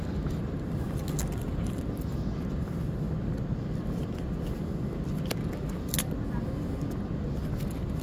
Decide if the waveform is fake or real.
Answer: real